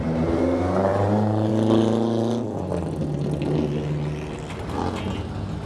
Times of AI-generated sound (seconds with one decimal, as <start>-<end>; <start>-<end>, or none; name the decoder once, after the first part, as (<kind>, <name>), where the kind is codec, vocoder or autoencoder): none